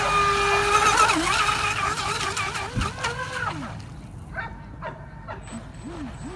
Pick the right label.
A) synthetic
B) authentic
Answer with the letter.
B